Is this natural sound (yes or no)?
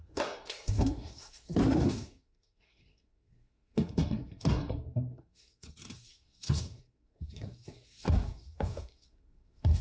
no